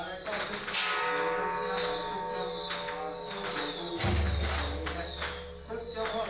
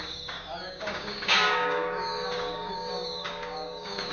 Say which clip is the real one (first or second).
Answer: first